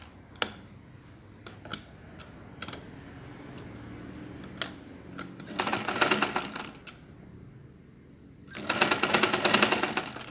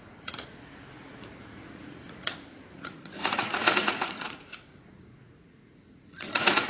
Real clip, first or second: first